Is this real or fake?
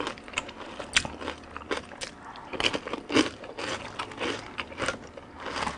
real